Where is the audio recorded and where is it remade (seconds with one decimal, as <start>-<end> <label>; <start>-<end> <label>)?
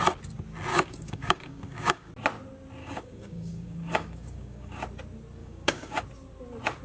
0.0-0.7 recorded; 0.7-2.1 remade; 2.1-2.8 recorded; 2.8-4.8 remade; 4.8-5.4 recorded; 5.4-6.0 remade; 6.0-6.8 recorded